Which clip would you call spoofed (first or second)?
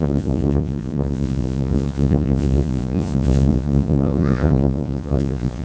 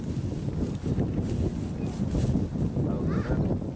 first